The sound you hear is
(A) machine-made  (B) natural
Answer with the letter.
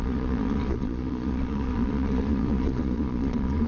A